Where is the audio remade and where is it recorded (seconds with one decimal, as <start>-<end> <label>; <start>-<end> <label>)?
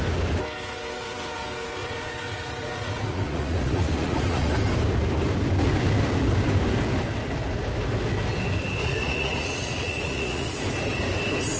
0.0-1.8 recorded; 1.8-4.5 remade; 4.5-8.8 recorded; 8.8-10.6 remade; 10.6-11.6 recorded